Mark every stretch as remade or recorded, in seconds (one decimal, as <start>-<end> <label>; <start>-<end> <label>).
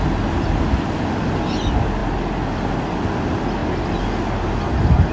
0.0-5.1 recorded